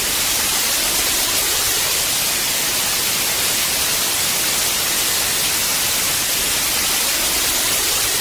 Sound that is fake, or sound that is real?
real